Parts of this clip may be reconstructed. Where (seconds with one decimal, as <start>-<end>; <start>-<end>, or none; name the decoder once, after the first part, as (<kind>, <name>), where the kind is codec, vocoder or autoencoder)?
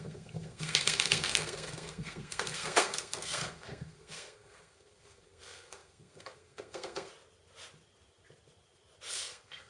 0.0-7.1 (codec, SNAC); 9.1-9.7